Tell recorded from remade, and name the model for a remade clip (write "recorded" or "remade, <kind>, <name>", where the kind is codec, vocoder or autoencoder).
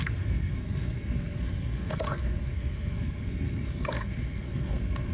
remade, codec, SNAC